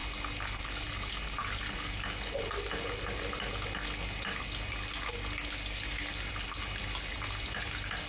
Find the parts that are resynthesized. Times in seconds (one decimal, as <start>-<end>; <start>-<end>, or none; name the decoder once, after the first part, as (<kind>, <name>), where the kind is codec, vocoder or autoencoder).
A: none